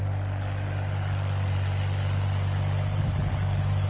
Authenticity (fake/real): real